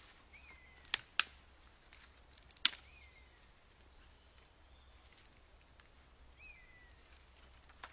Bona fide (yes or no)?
yes